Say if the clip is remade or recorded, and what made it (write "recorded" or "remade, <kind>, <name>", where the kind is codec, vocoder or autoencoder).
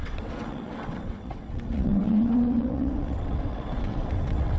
remade, vocoder, WaveNeXt